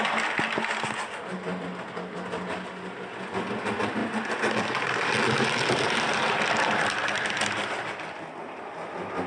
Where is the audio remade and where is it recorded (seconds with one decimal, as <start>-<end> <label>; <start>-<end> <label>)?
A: 0.0-9.3 recorded